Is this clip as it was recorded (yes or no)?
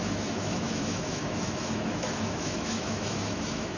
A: no